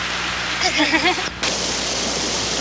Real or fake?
real